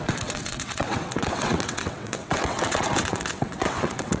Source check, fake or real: fake